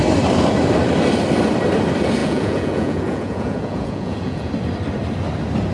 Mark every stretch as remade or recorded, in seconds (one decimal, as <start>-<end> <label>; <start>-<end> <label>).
0.0-2.2 recorded; 2.2-4.5 remade; 4.5-5.7 recorded